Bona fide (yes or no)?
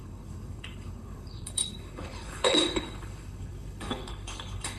no